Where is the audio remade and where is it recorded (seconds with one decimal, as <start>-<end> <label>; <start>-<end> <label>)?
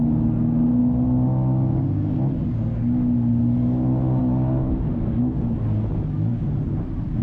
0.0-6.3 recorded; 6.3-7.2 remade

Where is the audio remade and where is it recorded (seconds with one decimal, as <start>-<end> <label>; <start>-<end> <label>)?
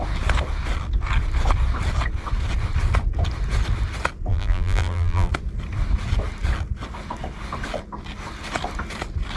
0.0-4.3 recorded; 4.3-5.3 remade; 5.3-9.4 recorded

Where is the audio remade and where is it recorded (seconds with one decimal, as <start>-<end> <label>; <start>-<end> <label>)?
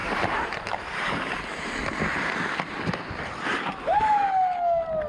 0.0-1.7 remade; 1.7-3.5 recorded; 3.5-4.1 remade; 4.1-5.1 recorded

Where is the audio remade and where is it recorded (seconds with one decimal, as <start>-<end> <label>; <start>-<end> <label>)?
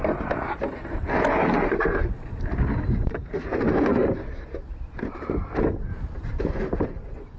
0.0-7.4 recorded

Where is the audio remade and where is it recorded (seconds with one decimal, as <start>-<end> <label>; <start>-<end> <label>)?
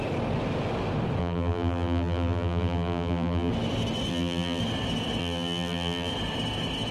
0.0-1.2 recorded; 1.2-3.5 remade; 3.5-4.1 recorded; 4.1-4.6 remade; 4.6-5.2 recorded; 5.2-6.1 remade; 6.1-6.9 recorded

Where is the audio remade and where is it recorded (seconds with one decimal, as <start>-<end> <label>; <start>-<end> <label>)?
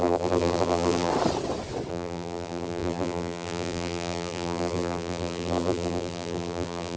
0.0-1.1 remade; 1.1-1.9 recorded; 1.9-7.0 remade